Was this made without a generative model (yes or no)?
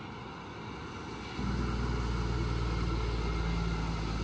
yes